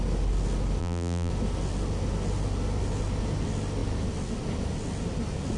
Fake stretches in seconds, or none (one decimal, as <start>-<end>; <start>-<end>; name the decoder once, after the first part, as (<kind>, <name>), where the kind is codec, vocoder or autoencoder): 0.8-1.3 (vocoder, BigVGAN v2)